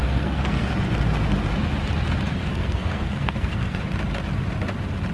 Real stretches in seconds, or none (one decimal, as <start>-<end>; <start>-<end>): 0.7-2.3; 3.8-5.1